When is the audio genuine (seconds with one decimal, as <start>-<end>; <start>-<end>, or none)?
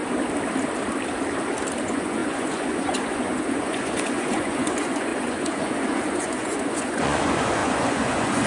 0.0-1.8